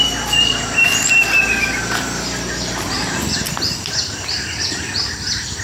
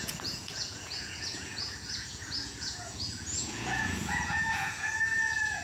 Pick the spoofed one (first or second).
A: second